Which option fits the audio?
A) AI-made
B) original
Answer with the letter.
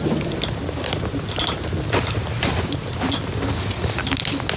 B